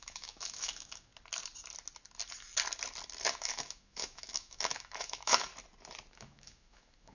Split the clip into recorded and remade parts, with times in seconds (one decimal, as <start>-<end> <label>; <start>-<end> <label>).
0.0-1.1 remade; 1.1-3.2 recorded; 3.2-5.5 remade; 5.5-6.1 recorded; 6.1-7.1 remade